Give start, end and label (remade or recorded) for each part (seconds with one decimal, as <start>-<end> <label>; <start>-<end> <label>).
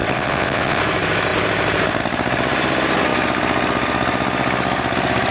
0.0-0.8 remade; 0.8-5.3 recorded